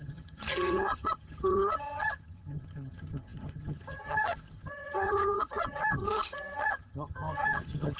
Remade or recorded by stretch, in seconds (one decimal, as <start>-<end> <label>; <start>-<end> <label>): 0.0-8.0 remade

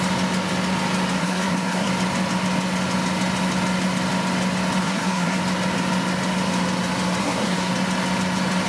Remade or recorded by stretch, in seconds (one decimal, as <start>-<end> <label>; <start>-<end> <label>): 0.0-1.2 recorded; 1.2-1.9 remade; 1.9-4.8 recorded; 4.8-5.4 remade; 5.4-7.2 recorded; 7.2-7.7 remade; 7.7-8.7 recorded

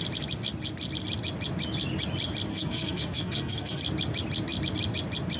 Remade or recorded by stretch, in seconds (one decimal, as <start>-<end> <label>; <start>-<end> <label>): 0.0-2.5 recorded; 2.5-3.8 remade; 3.8-5.4 recorded

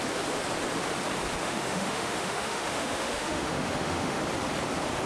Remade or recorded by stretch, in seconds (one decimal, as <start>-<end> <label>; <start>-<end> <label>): 0.0-1.4 recorded; 1.4-4.2 remade; 4.2-5.1 recorded

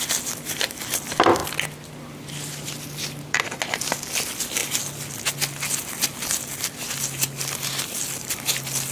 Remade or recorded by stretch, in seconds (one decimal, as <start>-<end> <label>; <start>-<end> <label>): 0.0-8.9 recorded

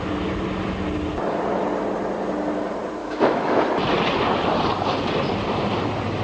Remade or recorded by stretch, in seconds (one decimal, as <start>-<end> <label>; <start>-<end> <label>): 0.0-3.0 recorded; 3.0-3.6 remade; 3.6-6.2 recorded